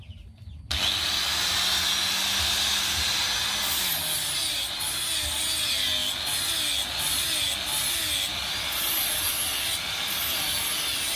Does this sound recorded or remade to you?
recorded